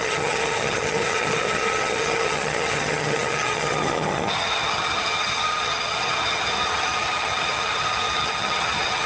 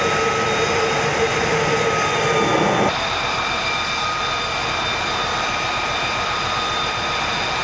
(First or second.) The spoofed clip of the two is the first